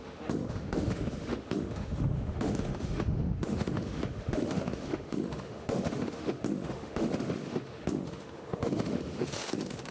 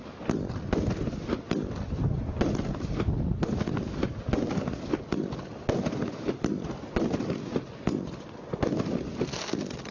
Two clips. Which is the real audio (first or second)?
second